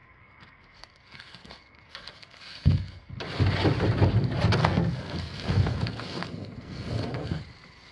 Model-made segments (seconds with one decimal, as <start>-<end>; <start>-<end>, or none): 0.0-3.2; 4.6-7.4